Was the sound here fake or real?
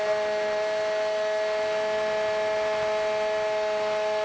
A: real